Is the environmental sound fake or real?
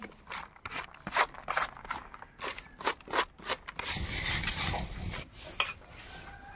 real